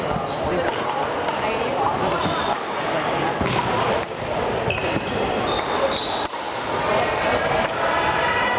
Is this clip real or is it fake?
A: real